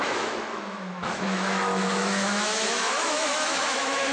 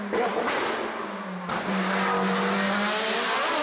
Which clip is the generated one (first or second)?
first